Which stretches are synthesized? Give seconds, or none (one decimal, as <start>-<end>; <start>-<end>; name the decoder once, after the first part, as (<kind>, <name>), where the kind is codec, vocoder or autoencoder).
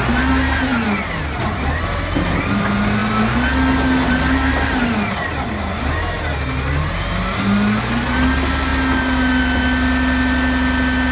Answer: none